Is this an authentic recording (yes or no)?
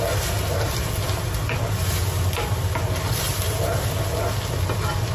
yes